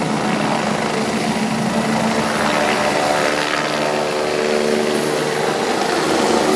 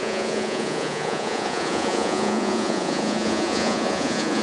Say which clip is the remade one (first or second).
second